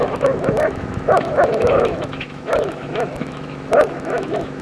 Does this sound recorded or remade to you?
remade